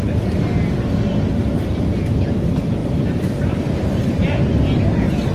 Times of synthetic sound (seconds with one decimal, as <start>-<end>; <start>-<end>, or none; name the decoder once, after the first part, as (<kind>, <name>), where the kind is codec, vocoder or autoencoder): none